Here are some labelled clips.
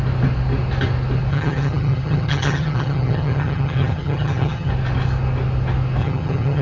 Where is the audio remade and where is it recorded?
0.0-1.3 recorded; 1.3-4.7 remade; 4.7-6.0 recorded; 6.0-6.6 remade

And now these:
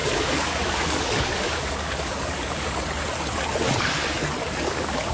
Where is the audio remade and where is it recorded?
0.0-2.8 remade; 2.8-4.4 recorded; 4.4-5.1 remade

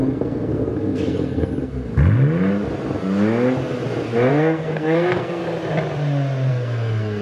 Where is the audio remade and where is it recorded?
0.0-1.9 remade; 1.9-4.3 recorded; 4.3-5.4 remade; 5.4-6.5 recorded; 6.5-7.2 remade